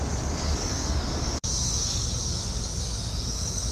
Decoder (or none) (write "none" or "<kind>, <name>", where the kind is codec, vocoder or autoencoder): codec, DAC